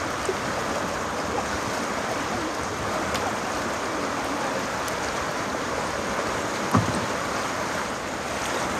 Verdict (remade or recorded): remade